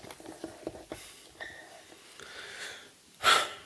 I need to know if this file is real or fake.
real